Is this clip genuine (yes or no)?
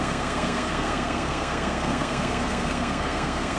no